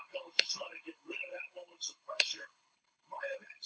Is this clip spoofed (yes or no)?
yes